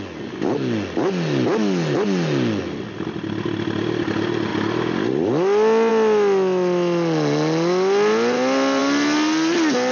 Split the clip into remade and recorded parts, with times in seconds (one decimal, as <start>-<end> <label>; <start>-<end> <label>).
0.0-9.9 recorded